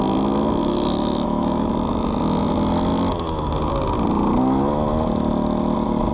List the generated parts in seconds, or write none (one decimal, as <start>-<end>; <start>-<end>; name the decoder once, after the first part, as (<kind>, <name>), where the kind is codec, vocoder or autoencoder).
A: 0.6-1.7 (autoencoder, DAC-VAE)